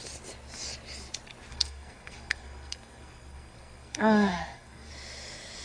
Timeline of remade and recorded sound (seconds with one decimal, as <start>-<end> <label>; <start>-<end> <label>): 0.0-1.5 recorded; 1.5-4.9 remade; 4.9-5.6 recorded